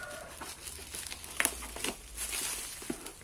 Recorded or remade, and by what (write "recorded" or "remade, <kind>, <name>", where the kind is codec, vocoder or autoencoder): recorded